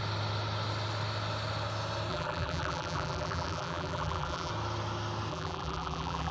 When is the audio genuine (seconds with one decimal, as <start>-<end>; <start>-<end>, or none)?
0.0-2.1; 4.5-5.3